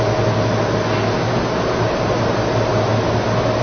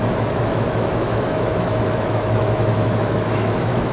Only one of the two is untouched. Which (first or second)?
first